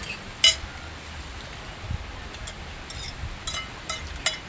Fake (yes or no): no